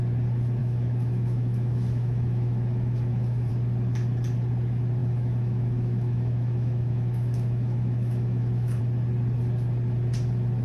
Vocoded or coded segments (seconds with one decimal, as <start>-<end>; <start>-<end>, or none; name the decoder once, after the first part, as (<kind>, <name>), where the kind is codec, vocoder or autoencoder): 0.6-3.5 (autoencoder, DAC-VAE); 5.0-8.8